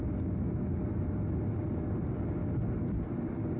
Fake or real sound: real